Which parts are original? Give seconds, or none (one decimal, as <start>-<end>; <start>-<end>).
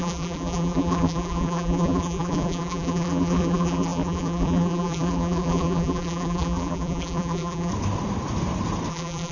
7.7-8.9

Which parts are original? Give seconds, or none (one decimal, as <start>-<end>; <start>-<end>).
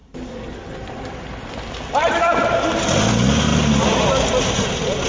0.0-5.1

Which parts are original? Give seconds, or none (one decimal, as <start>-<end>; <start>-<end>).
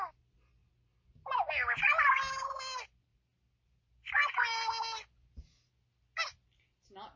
0.0-7.2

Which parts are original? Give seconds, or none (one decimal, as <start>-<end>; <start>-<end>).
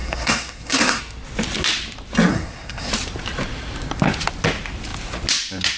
1.0-2.3; 2.9-5.8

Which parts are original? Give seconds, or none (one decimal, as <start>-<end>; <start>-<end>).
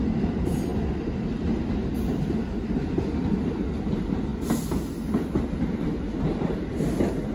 0.0-7.3